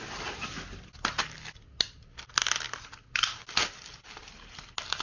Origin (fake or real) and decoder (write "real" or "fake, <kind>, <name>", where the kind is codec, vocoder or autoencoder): real